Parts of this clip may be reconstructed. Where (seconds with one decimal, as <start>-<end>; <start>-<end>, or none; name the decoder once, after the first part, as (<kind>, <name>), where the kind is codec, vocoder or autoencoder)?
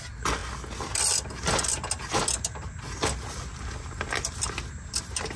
none